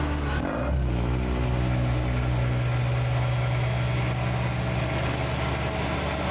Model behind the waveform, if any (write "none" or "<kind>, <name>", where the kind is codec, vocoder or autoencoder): none